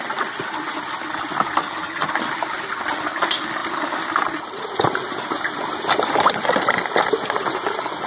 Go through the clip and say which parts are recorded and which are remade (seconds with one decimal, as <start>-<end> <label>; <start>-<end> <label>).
0.0-1.6 recorded; 1.6-2.1 remade; 2.1-8.1 recorded